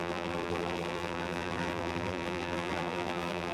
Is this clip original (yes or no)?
no